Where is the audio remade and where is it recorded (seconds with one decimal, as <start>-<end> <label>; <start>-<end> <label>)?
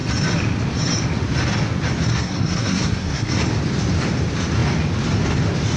0.0-2.1 recorded; 2.1-3.4 remade; 3.4-5.8 recorded